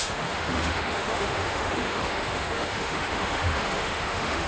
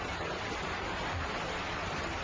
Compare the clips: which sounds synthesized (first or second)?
first